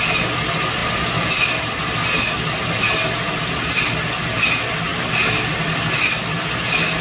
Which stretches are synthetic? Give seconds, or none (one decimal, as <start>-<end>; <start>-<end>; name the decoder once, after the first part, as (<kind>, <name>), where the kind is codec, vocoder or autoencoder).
none